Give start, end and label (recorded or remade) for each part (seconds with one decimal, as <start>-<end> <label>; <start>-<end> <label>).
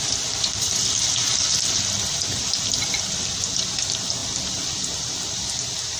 0.0-6.0 recorded